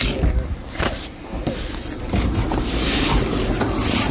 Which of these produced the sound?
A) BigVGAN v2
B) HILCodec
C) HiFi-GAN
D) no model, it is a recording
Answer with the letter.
D